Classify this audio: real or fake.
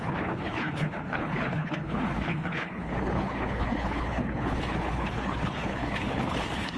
fake